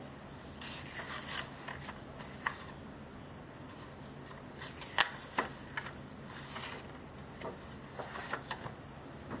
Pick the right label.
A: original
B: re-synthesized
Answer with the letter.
A